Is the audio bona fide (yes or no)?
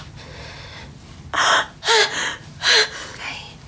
yes